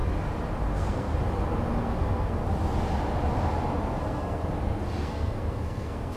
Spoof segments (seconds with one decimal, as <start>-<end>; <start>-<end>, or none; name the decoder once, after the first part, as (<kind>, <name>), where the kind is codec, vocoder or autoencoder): 0.7-1.1 (codec, SNAC); 1.8-2.4; 4.0-4.4; 5.0-6.2